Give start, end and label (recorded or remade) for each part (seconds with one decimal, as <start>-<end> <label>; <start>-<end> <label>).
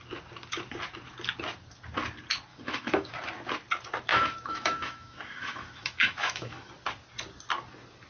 0.0-2.5 recorded; 2.5-3.1 remade; 3.1-4.1 recorded; 4.1-6.7 remade; 6.7-8.1 recorded